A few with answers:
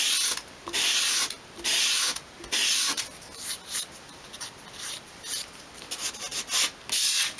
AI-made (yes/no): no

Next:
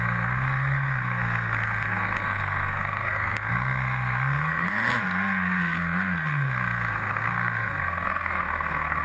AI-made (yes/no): yes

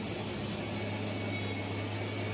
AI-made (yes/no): no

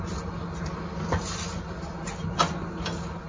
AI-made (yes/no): no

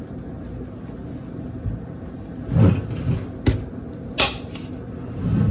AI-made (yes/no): no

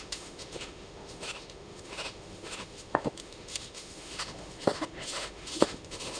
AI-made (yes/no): yes